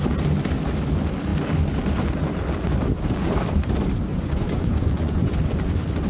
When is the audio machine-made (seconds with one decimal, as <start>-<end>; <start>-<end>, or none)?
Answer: 4.1-5.3

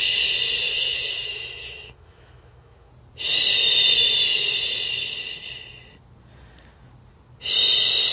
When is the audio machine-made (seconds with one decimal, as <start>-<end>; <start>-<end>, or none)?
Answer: 0.6-2.9

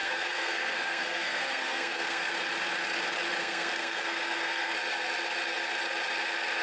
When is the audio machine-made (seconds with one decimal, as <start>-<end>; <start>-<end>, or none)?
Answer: 0.0-2.3; 3.4-4.7

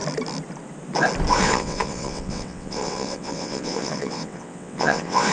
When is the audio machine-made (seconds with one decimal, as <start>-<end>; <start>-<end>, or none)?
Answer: 1.4-5.3